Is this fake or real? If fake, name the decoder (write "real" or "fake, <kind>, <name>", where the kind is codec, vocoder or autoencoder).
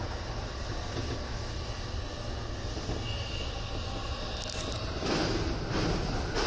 real